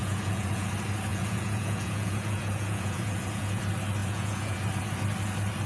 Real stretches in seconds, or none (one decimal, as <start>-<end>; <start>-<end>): 0.7-1.1; 3.6-4.0; 4.6-5.7